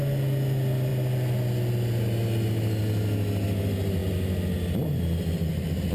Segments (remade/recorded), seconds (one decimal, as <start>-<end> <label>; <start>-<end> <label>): 0.0-5.9 recorded